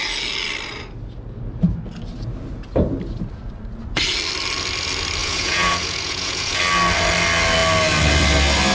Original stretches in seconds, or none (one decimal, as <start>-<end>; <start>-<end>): 0.0-5.2; 6.6-8.7